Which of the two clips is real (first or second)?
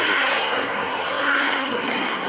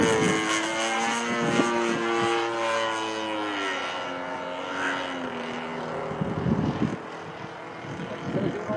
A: second